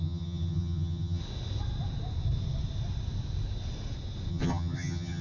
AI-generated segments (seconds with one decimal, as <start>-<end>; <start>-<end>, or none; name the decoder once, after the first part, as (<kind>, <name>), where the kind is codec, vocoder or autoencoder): 0.0-1.2 (vocoder, HiFi-GAN); 4.3-5.2